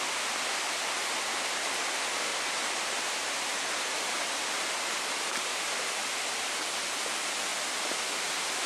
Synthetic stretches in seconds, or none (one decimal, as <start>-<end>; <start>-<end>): 2.3-6.6